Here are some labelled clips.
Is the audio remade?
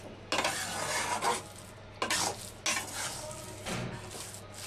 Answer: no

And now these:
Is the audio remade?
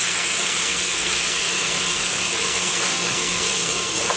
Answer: yes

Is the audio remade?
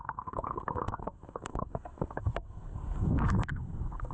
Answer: yes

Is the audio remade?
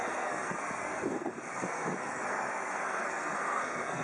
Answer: yes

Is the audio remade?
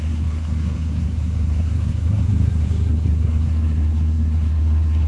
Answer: yes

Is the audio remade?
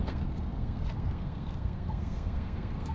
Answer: yes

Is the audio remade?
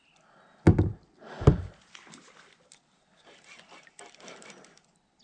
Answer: no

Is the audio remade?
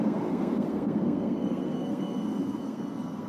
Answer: yes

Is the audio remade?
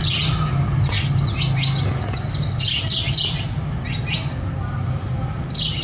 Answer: no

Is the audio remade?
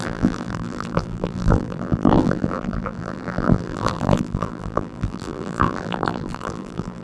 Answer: yes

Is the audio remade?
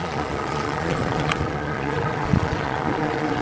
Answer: yes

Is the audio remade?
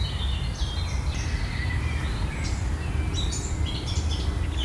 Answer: no